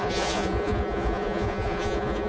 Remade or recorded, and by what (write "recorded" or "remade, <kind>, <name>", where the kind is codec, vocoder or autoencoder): remade, vocoder, Vocos